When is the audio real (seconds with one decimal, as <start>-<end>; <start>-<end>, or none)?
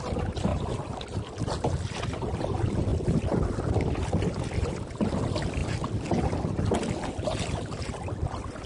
0.0-8.7